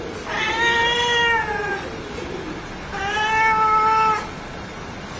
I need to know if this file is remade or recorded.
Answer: recorded